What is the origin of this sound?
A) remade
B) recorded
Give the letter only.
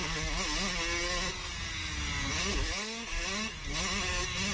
B